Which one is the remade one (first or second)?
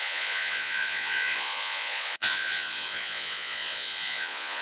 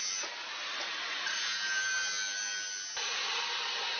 first